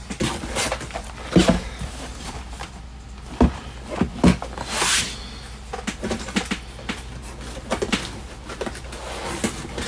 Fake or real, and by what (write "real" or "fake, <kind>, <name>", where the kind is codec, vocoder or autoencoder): real